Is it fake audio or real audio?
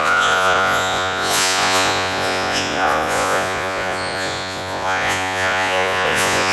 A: fake